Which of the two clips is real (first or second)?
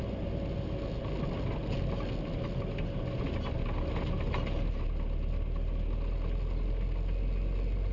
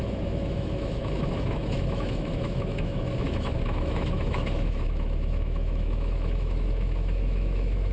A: first